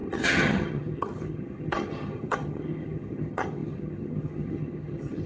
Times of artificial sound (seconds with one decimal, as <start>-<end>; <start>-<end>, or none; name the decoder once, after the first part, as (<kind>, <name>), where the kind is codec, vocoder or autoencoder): 0.0-5.3 (vocoder, HiFi-GAN)